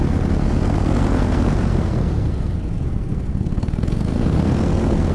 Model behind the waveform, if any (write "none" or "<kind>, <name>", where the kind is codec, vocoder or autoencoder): codec, SNAC